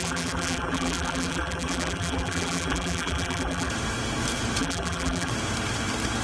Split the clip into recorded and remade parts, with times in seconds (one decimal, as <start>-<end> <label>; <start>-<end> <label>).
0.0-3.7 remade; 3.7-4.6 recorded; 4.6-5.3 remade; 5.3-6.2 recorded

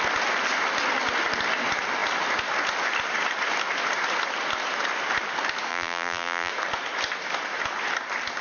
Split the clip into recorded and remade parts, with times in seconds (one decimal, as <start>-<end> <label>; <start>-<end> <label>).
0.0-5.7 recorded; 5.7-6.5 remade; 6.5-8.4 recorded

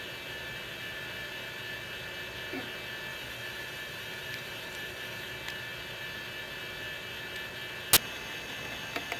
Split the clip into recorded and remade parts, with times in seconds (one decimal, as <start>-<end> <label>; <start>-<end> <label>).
0.0-3.1 recorded; 3.1-5.3 remade; 5.3-9.2 recorded

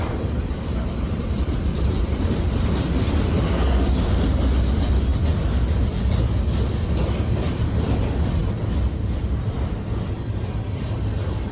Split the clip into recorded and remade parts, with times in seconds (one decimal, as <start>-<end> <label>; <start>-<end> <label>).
0.0-5.1 remade; 5.1-6.2 recorded; 6.2-11.5 remade